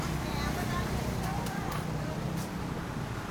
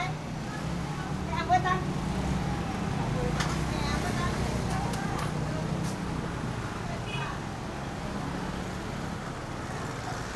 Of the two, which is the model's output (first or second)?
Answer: first